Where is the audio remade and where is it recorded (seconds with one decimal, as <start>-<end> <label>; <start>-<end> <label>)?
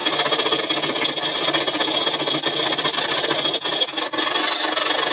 0.0-5.1 recorded